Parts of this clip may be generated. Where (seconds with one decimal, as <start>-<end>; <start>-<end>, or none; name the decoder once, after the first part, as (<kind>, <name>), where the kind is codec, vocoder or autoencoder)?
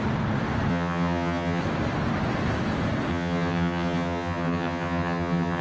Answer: 0.7-1.6 (vocoder, HiFi-GAN); 3.1-5.6